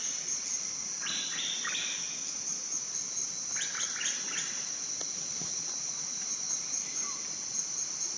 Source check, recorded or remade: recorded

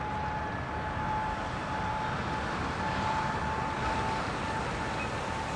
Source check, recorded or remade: recorded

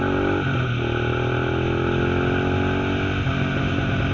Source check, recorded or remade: recorded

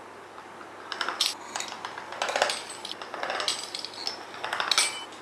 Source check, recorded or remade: recorded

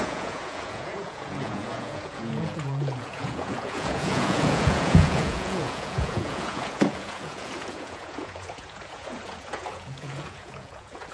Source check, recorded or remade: remade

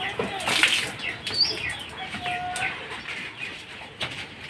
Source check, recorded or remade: recorded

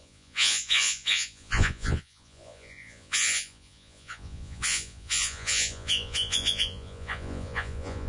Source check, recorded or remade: remade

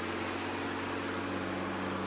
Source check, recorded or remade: recorded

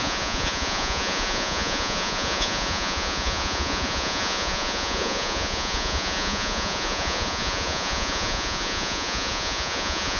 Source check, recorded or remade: remade